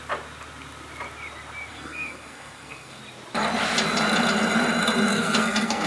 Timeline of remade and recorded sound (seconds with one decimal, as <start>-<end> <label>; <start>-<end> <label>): 0.0-1.7 recorded; 1.7-3.0 remade; 3.0-5.1 recorded; 5.1-5.9 remade